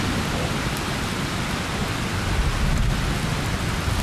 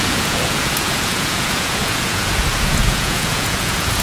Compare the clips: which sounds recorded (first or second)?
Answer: first